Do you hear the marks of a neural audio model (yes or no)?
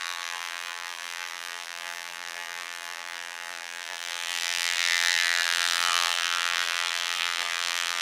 yes